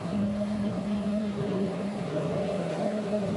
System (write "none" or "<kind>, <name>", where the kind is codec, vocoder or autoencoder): codec, SNAC